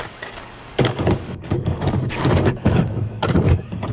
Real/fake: fake